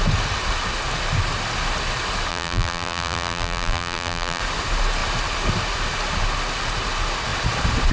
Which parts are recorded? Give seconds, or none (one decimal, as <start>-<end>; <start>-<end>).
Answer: 0.0-2.3; 4.4-7.9